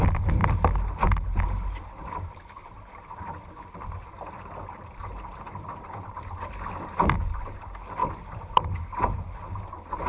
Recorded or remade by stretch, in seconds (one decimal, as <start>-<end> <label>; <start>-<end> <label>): 0.0-10.1 recorded